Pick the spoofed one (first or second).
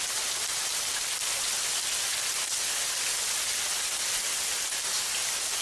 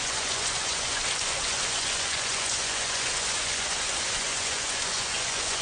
second